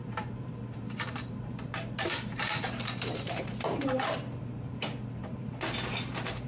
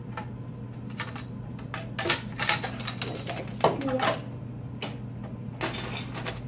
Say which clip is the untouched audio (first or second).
second